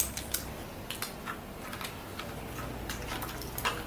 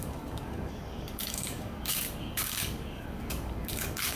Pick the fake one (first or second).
second